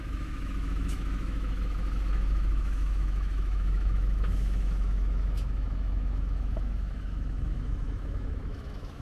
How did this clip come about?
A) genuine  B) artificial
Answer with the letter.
B